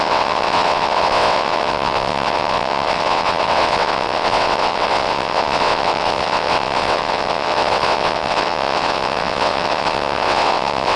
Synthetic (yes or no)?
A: yes